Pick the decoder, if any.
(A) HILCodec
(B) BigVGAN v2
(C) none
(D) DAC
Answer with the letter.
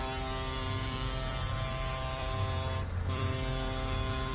B